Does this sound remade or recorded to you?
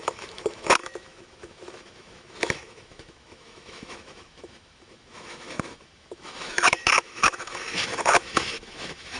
remade